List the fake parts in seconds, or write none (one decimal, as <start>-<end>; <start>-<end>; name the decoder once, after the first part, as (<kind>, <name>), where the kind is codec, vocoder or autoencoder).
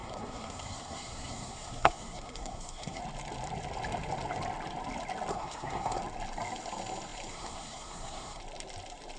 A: 0.0-3.0 (codec, SNAC); 5.3-6.0; 7.3-8.4